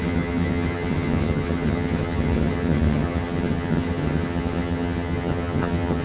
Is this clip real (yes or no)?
no